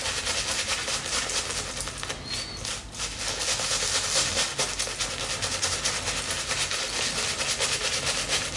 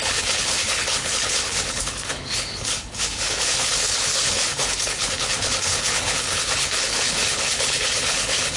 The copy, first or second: second